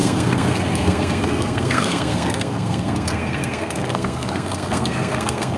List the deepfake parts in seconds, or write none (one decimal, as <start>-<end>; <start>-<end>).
0.0-5.6